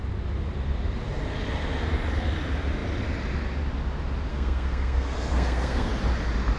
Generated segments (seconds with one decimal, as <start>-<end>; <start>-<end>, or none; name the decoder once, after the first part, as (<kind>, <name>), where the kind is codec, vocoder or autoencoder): 4.3-5.9 (codec, SNAC)